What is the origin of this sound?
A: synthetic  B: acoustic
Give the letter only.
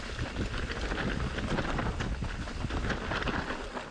B